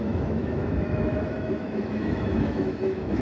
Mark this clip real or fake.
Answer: fake